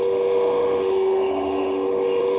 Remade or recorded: remade